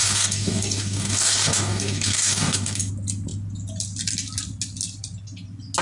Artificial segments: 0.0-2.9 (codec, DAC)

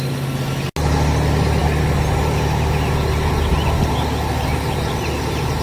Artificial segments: none

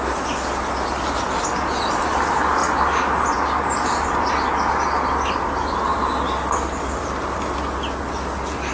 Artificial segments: 2.6-4.1 (vocoder, BigVGAN v2)